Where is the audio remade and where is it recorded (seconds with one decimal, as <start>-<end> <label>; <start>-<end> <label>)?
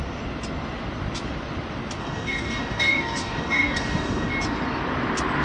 0.0-2.0 recorded; 2.0-4.3 remade; 4.3-5.4 recorded